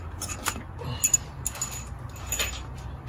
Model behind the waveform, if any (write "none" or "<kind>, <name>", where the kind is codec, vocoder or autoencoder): none